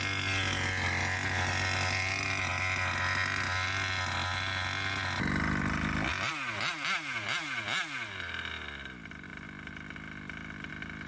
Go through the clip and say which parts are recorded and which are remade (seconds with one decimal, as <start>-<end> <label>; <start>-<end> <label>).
0.0-11.1 recorded